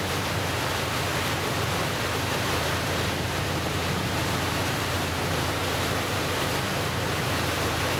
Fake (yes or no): yes